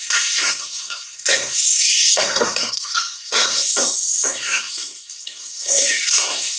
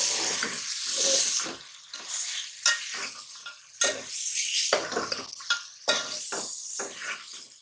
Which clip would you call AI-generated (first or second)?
first